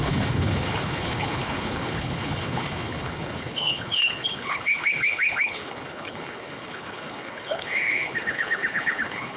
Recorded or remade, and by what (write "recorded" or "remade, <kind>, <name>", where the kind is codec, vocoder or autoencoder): remade, codec, HILCodec